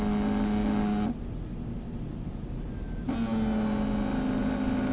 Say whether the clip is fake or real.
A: real